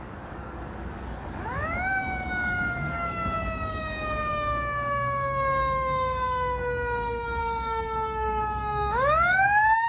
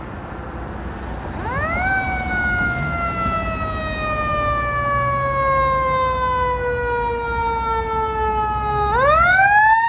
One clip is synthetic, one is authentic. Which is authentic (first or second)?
second